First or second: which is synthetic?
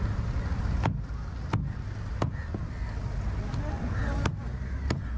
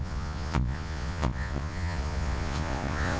second